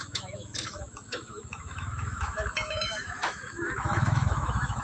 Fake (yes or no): yes